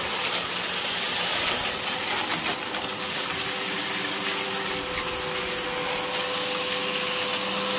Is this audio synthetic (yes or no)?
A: no